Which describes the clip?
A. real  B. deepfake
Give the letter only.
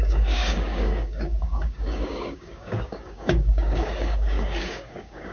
B